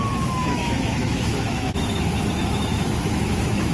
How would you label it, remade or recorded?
remade